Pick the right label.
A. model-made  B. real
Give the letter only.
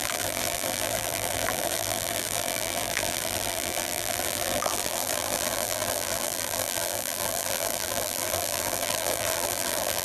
A